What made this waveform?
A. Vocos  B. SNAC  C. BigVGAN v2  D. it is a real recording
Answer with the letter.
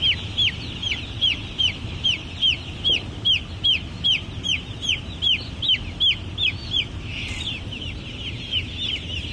D